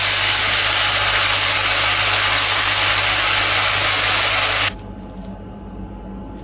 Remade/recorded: recorded